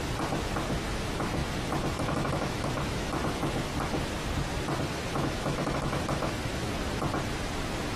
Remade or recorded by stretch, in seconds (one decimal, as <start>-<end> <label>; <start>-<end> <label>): 0.0-0.7 recorded; 0.7-3.7 remade; 3.7-4.9 recorded; 4.9-6.8 remade; 6.8-8.0 recorded